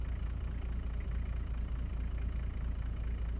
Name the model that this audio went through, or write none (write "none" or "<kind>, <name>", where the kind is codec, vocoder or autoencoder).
none